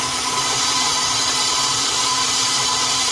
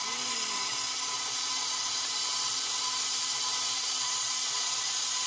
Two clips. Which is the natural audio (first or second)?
second